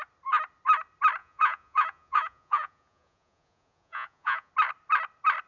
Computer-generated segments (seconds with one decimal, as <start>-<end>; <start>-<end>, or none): 1.2-4.5